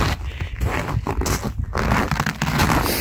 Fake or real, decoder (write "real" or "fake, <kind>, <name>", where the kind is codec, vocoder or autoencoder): real